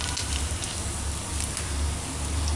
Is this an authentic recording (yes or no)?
yes